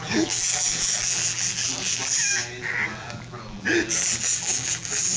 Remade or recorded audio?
remade